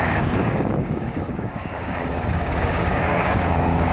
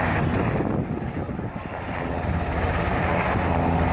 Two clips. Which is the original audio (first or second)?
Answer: second